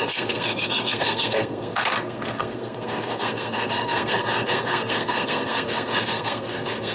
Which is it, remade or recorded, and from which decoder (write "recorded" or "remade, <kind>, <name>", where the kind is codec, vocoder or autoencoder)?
remade, codec, SNAC